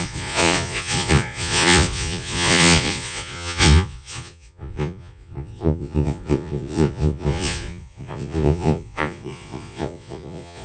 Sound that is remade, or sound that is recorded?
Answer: remade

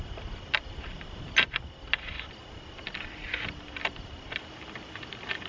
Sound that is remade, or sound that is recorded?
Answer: recorded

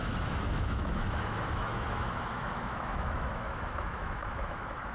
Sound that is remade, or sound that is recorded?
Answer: remade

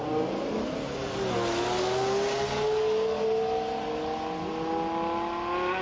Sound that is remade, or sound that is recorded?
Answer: recorded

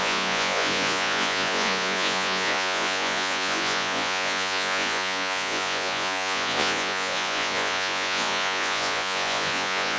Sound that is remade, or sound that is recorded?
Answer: remade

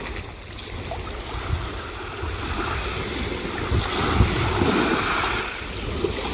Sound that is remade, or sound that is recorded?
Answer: recorded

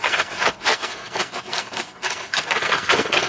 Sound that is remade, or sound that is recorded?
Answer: remade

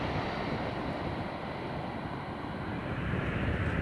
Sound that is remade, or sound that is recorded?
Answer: recorded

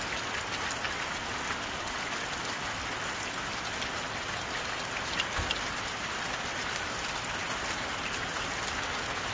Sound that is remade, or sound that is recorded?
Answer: recorded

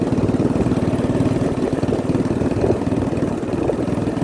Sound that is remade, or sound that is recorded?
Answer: recorded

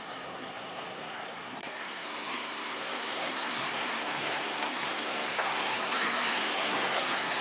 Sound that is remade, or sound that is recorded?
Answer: remade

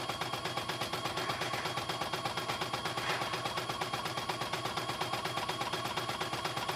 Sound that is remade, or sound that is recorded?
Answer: recorded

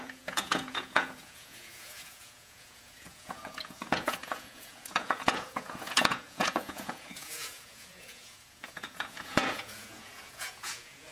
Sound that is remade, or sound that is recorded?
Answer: remade